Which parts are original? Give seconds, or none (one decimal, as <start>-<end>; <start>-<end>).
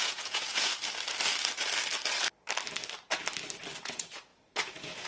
0.7-3.8